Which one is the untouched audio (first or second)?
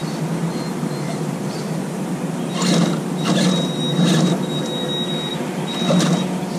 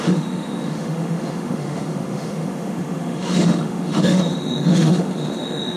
first